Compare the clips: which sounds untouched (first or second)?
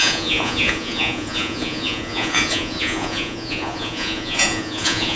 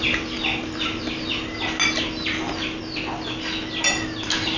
second